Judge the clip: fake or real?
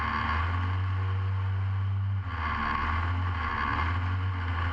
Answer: real